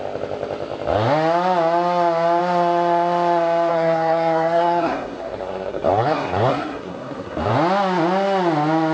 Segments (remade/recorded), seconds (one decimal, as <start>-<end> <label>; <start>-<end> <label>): 0.0-3.7 recorded; 3.7-7.5 remade; 7.5-8.9 recorded